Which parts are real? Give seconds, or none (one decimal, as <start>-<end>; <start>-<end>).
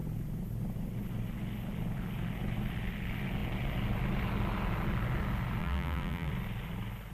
0.0-5.6; 6.3-7.1